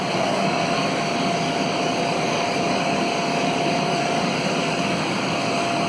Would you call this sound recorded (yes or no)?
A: no